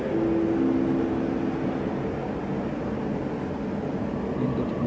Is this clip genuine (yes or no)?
yes